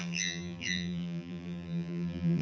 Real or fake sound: fake